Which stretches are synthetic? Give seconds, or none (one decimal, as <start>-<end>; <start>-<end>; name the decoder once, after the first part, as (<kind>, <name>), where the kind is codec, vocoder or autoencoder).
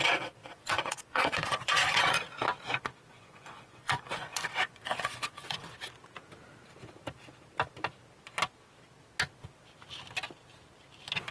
0.4-2.2 (vocoder, Vocos); 3.1-5.6